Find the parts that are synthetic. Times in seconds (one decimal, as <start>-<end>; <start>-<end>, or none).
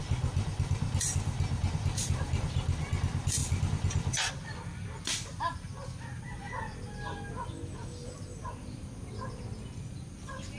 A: 8.0-9.4